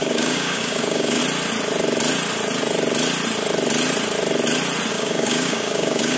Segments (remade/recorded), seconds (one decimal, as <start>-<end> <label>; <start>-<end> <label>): 0.0-1.2 remade; 1.2-4.9 recorded; 4.9-6.2 remade